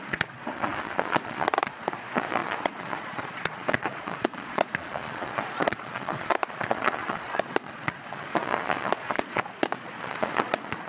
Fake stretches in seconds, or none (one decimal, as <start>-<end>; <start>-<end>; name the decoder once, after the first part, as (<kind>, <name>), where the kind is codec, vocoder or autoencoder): 0.0-10.9 (vocoder, Vocos)